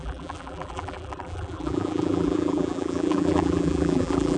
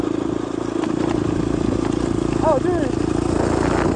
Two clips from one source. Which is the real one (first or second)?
second